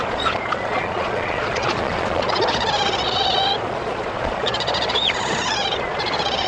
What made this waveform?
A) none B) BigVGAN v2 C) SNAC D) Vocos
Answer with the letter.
D